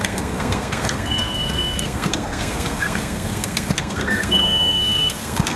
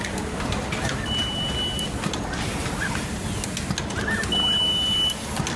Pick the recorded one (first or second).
second